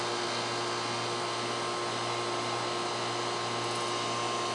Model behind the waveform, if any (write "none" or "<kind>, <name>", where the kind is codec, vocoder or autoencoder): none